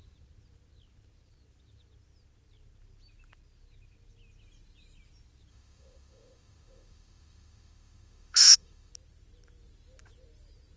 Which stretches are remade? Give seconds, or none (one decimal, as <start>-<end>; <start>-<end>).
5.5-8.9